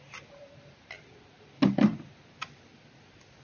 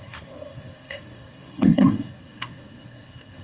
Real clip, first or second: first